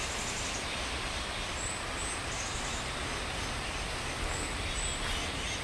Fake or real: real